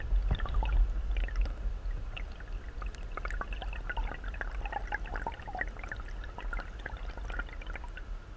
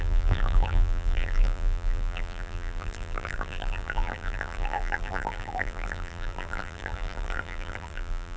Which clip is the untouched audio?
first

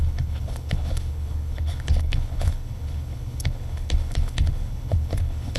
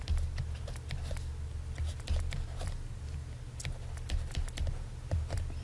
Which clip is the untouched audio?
second